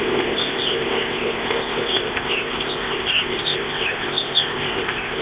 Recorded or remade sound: remade